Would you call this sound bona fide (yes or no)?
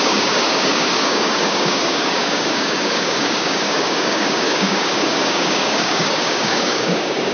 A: no